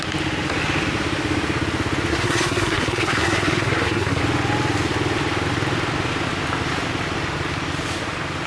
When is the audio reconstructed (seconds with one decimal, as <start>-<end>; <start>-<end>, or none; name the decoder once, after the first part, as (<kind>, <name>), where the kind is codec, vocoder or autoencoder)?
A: 2.1-4.2 (codec, SNAC)

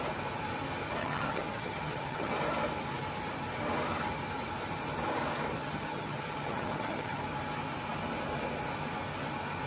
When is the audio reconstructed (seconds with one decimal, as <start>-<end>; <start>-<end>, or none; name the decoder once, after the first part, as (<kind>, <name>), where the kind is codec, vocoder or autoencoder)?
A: 1.0-2.3 (vocoder, HiFi-GAN); 5.6-7.2

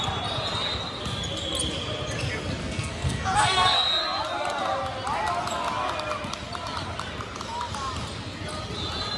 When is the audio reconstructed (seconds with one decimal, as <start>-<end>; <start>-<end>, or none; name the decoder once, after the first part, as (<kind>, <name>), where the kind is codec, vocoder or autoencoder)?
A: 2.6-3.9 (codec, SNAC)

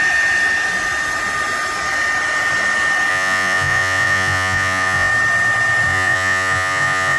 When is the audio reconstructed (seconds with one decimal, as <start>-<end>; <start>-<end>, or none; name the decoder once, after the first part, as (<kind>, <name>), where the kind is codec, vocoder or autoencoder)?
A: 3.1-5.1 (vocoder, Vocos); 5.9-7.2

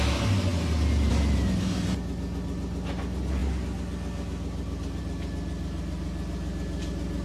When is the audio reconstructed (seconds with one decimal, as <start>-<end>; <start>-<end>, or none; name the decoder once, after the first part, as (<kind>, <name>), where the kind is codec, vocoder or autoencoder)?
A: none

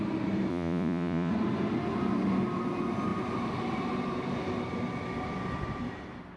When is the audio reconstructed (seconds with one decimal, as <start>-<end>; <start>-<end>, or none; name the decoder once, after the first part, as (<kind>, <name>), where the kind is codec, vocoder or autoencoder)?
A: 0.5-1.3 (vocoder, Vocos)